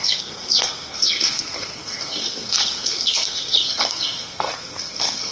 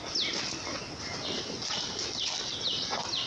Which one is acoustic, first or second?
second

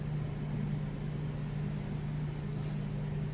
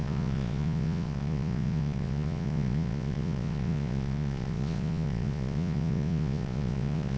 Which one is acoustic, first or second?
first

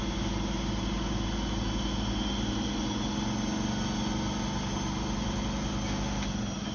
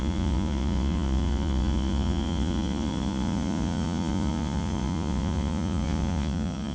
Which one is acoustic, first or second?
first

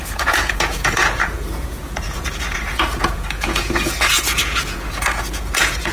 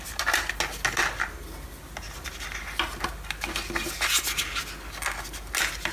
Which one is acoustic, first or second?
second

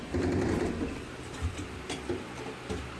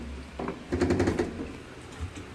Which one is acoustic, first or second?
second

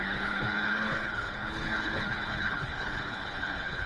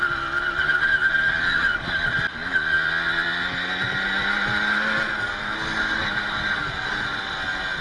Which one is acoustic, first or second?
second